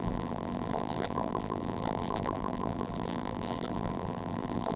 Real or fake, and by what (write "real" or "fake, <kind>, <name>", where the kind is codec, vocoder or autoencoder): fake, vocoder, BigVGAN v2